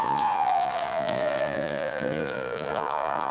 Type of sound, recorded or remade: remade